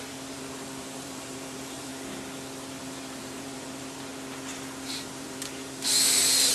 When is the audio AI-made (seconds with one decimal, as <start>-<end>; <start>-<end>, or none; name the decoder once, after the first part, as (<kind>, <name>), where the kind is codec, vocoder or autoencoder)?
0.0-1.9 (vocoder, BigVGAN v2); 2.8-4.1; 4.9-6.5